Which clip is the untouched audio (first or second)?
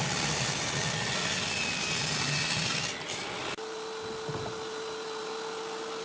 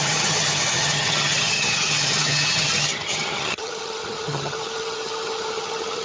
first